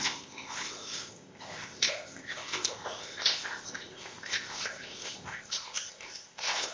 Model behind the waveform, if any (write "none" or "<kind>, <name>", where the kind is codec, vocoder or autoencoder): codec, ZipCodec